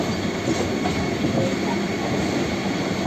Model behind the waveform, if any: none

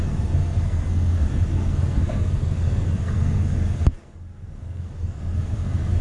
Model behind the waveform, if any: codec, SNAC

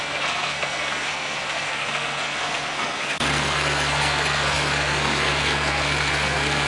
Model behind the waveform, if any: codec, SNAC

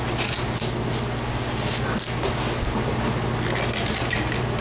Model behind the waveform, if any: none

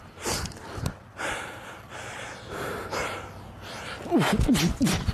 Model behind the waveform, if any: none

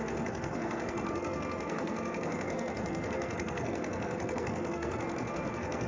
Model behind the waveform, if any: codec, SNAC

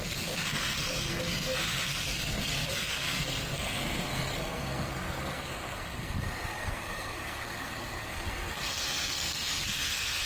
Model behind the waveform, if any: codec, SNAC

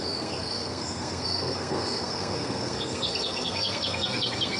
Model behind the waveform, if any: codec, SNAC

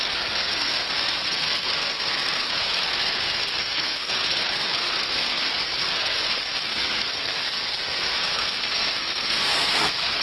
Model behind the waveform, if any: codec, SNAC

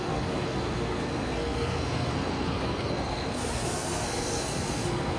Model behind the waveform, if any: codec, SNAC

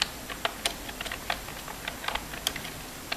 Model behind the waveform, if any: none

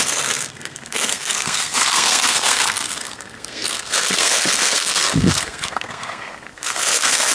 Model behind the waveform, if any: codec, SNAC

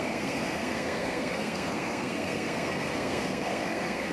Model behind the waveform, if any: codec, SNAC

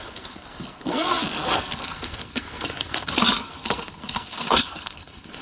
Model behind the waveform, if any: codec, SNAC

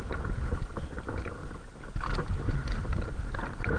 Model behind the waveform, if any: none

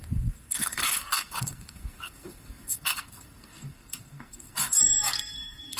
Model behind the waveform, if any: codec, SNAC